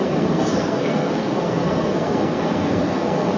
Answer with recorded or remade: remade